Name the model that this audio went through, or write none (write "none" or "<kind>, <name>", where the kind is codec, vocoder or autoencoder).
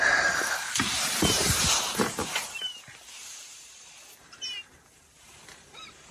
vocoder, BigVGAN v2